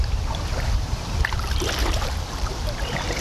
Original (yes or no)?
no